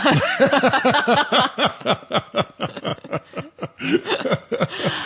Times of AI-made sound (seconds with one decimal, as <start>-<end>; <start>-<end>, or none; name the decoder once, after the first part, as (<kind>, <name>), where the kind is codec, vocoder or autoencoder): 1.7-2.3 (autoencoder, DAC-VAE)